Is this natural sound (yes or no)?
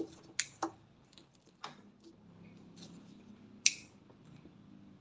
yes